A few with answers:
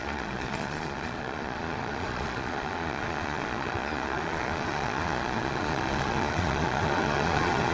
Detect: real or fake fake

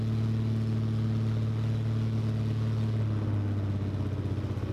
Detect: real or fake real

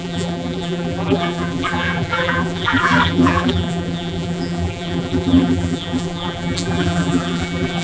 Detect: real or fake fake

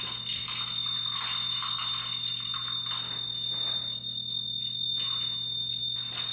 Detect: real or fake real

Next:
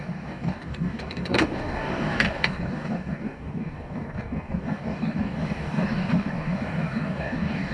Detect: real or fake fake